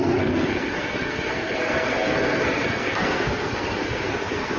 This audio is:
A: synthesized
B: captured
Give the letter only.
A